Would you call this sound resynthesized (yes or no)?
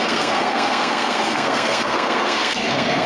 yes